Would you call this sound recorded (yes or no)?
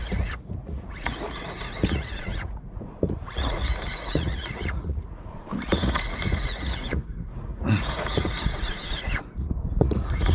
no